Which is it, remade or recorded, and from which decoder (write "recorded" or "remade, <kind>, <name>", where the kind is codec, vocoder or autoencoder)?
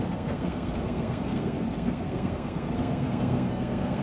remade, codec, SNAC